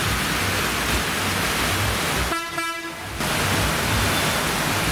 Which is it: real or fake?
real